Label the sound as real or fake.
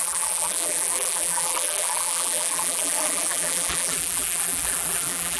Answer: fake